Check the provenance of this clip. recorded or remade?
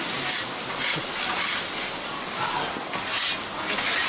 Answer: recorded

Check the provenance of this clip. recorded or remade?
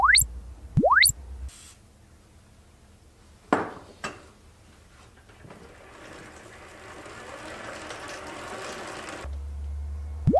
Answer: recorded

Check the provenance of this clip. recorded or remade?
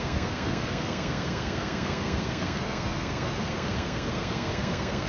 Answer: remade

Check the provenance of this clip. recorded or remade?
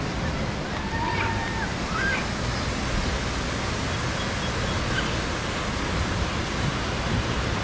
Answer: recorded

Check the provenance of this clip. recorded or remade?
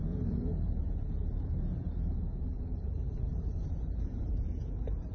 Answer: remade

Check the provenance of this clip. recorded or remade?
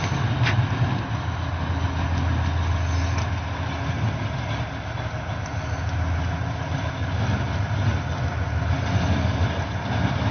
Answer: recorded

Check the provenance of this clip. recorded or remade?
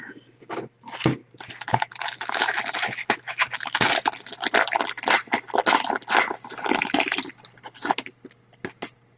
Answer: recorded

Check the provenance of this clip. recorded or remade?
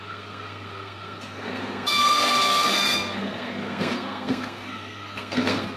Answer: remade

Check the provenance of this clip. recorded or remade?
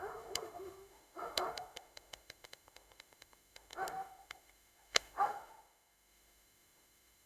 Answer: remade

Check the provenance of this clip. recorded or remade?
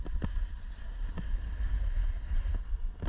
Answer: recorded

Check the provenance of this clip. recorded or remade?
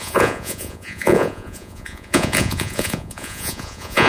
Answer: remade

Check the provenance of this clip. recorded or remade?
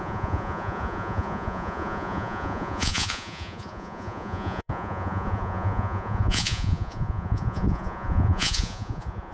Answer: remade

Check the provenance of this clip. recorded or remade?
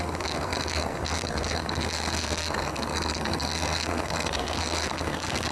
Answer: remade